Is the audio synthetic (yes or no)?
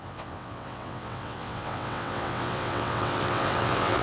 yes